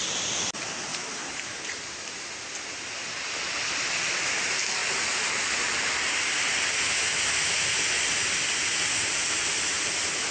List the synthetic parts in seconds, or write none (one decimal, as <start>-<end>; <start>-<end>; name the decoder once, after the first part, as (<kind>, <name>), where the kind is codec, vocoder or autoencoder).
0.9-1.9 (vocoder, BigVGAN v2); 9.4-9.9